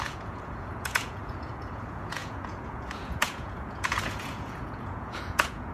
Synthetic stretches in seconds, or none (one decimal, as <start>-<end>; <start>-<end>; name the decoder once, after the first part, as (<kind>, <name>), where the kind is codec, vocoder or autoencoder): 0.0-5.7 (vocoder, Vocos)